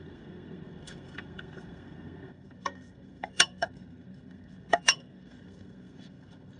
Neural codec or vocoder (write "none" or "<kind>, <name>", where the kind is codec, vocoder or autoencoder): codec, SNAC